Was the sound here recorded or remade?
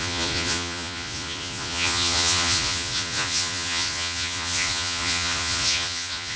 remade